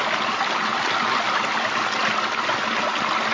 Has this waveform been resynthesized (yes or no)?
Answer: no